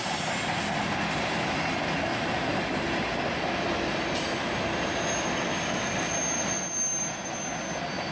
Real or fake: real